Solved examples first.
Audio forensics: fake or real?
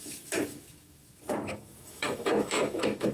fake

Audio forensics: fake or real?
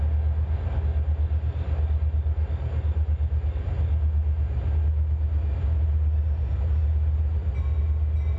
real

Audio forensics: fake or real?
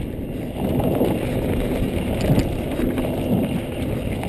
real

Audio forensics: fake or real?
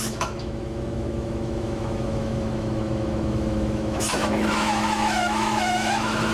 fake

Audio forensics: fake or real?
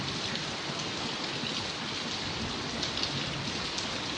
real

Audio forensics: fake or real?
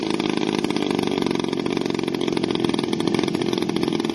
real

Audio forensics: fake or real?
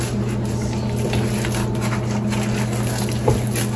real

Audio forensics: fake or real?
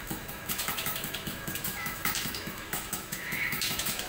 fake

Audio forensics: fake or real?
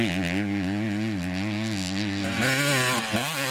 real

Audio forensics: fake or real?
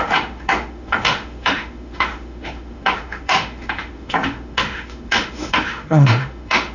fake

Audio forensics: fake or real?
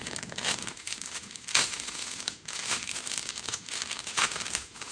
fake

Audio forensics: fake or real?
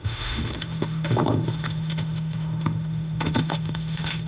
fake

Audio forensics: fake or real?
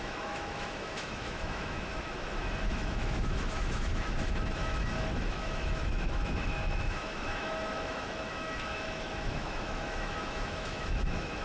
fake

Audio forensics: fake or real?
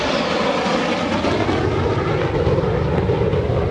real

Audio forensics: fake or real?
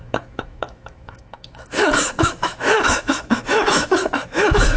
fake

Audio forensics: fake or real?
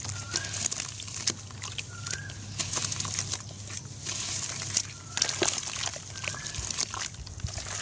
real